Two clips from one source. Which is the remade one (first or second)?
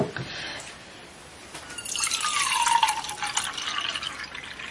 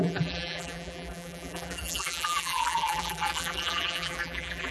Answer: second